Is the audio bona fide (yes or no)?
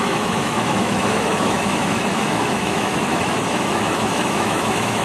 no